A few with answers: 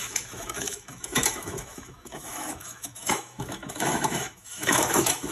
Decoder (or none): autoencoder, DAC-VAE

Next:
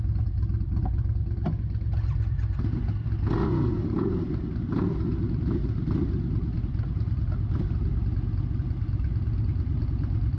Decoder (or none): none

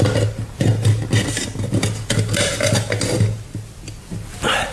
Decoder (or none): none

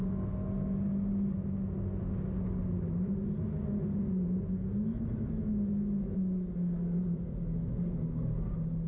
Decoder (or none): none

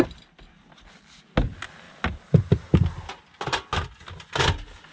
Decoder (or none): none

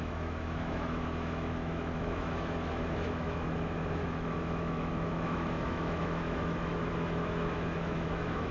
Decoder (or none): autoencoder, DAC-VAE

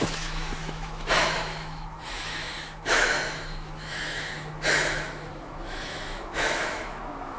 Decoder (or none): autoencoder, DAC-VAE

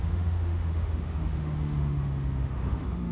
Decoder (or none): autoencoder, DAC-VAE